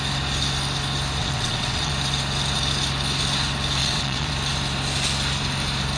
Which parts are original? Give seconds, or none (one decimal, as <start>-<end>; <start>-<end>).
0.0-1.2; 1.9-3.8; 4.3-6.0